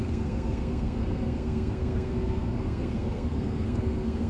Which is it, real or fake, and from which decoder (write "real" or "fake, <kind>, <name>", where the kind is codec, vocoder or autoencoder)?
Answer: fake, codec, SNAC